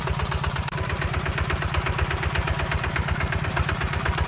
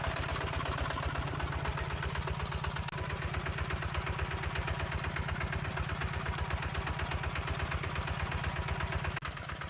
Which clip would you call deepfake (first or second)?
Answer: first